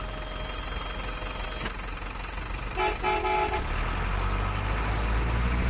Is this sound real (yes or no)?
yes